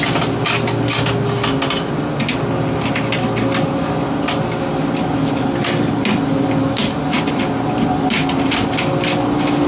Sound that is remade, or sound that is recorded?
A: recorded